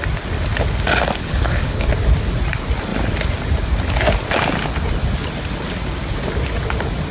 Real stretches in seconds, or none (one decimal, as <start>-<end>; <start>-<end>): 0.0-1.2; 1.9-7.1